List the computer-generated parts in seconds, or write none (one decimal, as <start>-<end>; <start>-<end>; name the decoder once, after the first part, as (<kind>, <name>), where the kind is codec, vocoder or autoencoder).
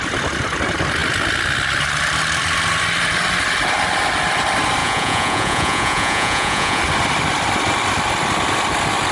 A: 4.8-6.8 (vocoder, Vocos)